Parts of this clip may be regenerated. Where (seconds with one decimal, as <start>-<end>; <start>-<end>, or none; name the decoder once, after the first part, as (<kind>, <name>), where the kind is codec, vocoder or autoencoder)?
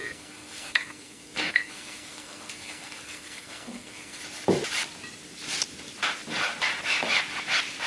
0.0-4.2 (codec, SNAC)